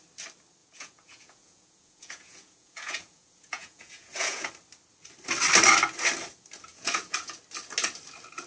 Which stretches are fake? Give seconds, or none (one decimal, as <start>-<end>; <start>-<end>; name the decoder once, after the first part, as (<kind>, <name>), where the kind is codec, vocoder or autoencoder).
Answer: 0.6-4.5 (vocoder, Vocos); 6.7-7.4